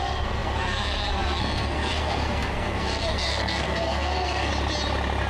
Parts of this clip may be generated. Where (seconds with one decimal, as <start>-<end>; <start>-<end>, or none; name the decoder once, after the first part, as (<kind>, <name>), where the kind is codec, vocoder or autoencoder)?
0.0-4.5 (codec, SNAC)